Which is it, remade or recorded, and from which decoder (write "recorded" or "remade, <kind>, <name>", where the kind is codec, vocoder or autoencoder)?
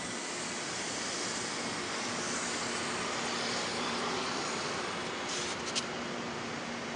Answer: recorded